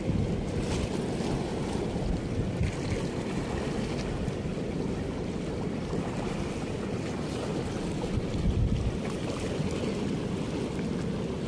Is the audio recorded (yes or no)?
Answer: yes